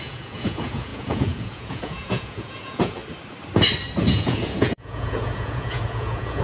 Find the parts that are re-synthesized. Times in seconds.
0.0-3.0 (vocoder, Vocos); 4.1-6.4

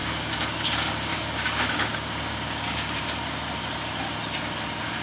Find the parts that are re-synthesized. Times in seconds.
0.0-0.7 (codec, DAC); 1.1-3.0

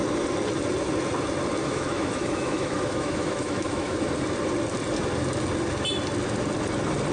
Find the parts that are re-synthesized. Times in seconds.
1.6-4.0 (autoencoder, DAC-VAE)

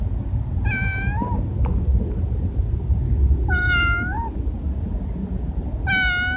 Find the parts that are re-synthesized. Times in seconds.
none

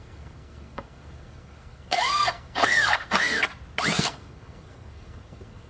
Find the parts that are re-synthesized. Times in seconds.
0.0-3.4 (codec, SNAC); 4.0-5.7